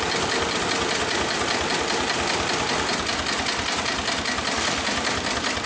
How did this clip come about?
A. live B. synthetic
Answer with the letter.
A